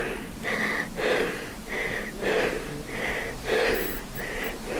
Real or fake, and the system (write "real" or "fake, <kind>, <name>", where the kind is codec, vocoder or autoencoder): real